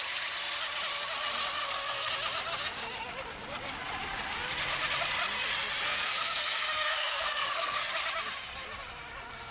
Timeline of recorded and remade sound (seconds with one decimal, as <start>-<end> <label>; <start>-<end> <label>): 0.0-1.6 recorded; 1.6-2.1 remade; 2.1-5.9 recorded; 5.9-7.9 remade; 7.9-9.5 recorded

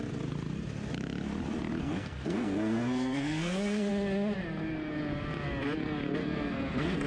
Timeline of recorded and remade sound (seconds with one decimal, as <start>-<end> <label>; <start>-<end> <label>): 0.0-1.8 recorded; 1.8-3.9 remade; 3.9-6.2 recorded; 6.2-7.1 remade

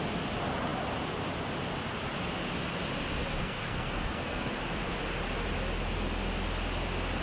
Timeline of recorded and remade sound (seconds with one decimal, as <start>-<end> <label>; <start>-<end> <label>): 0.0-3.4 recorded; 3.4-4.5 remade; 4.5-7.2 recorded

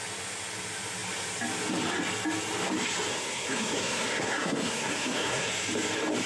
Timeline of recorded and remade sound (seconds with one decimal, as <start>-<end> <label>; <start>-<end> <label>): 0.0-3.1 recorded; 3.1-5.5 remade; 5.5-6.3 recorded

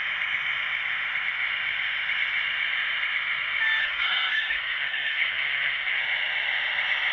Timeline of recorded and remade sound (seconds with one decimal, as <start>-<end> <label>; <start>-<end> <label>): 0.0-3.8 recorded; 3.8-6.0 remade; 6.0-7.1 recorded

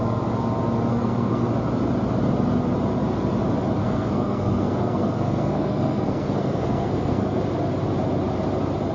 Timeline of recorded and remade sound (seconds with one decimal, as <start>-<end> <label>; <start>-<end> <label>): 0.0-0.9 recorded; 0.9-1.5 remade; 1.5-3.8 recorded; 3.8-7.4 remade; 7.4-8.9 recorded